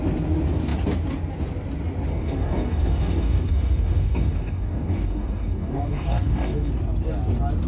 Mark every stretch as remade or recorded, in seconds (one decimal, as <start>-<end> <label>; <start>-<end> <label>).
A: 0.0-2.1 recorded; 2.1-6.7 remade; 6.7-7.7 recorded